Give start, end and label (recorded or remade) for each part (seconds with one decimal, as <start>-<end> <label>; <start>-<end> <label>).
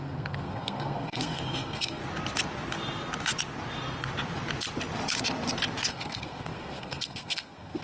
0.0-2.0 remade; 2.0-5.9 recorded; 5.9-7.8 remade